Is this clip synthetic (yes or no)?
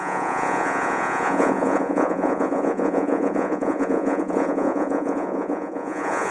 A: yes